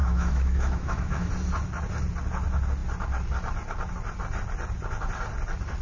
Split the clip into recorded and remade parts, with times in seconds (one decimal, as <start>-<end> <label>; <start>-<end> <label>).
0.0-1.3 remade; 1.3-5.8 recorded